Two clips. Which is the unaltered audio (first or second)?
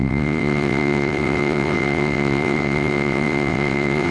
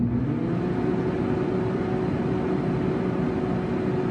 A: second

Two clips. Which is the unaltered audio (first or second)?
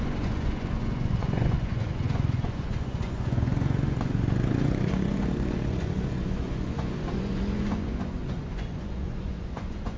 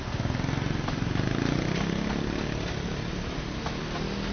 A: second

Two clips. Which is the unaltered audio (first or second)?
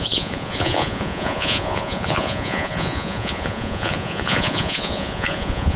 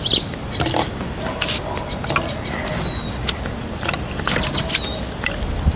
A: second